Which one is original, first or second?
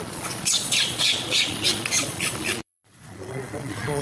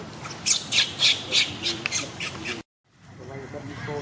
second